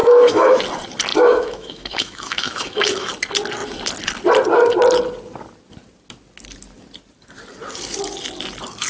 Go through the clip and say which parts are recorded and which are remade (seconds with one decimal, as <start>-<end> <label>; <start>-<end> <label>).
0.0-0.6 remade; 0.6-1.1 recorded; 1.1-3.1 remade; 3.1-8.9 recorded